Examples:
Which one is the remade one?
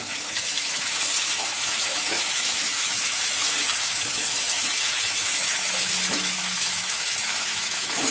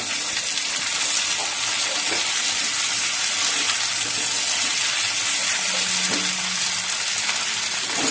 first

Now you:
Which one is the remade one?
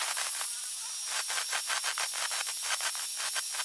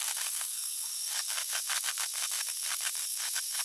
second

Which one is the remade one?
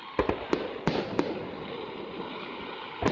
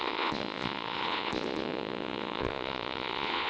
second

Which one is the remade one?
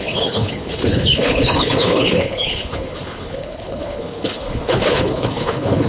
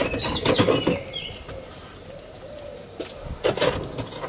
first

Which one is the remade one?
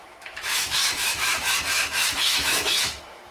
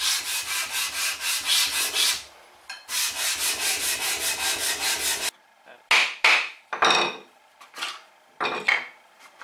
first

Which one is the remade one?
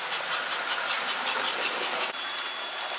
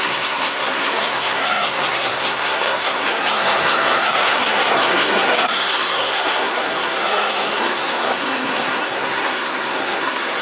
second